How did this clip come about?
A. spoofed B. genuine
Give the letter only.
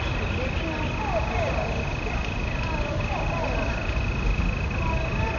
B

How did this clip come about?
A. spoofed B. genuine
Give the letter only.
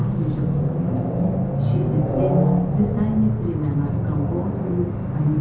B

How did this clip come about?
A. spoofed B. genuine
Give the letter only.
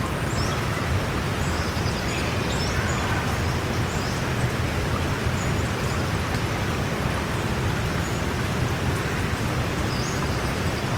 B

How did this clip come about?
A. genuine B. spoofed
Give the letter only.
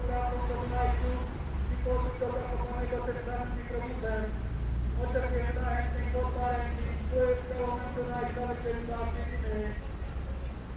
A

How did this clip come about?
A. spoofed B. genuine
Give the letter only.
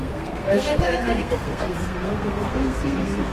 A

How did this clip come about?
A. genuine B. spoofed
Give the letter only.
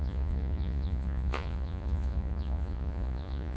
B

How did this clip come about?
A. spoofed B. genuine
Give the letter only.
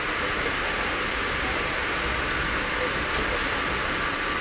B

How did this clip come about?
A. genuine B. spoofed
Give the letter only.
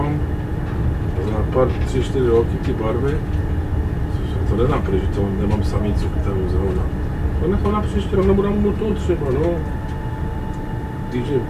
A